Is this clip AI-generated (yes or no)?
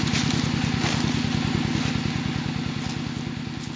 no